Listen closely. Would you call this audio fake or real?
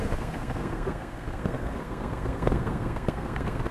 fake